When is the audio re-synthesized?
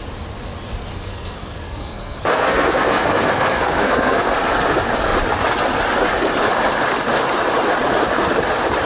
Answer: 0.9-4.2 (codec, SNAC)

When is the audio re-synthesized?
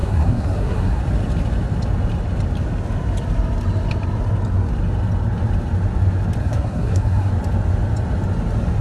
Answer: 0.0-1.0 (codec, SNAC); 6.4-7.3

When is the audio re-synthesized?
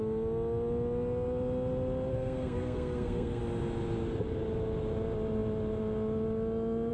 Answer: 2.1-3.4 (codec, SNAC)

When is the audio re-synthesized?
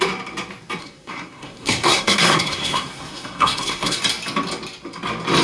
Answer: 0.8-4.0 (codec, SNAC)